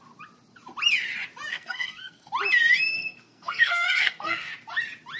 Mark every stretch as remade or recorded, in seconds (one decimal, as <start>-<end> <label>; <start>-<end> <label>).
0.0-1.5 recorded; 1.5-2.3 remade; 2.3-2.9 recorded; 2.9-4.5 remade; 4.5-5.2 recorded